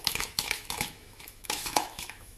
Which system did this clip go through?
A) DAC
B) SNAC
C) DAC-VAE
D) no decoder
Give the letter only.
C